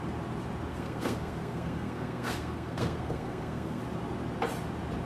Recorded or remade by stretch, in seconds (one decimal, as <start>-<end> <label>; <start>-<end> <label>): 0.0-0.7 recorded; 0.7-3.8 remade; 3.8-5.1 recorded